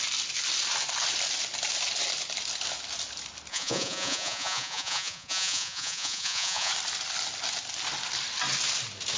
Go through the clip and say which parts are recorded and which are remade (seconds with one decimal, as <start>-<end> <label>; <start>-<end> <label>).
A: 0.0-3.5 recorded; 3.5-6.7 remade; 6.7-9.2 recorded